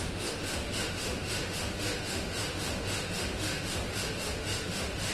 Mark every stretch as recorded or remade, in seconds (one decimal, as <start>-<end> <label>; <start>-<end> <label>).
0.0-5.1 remade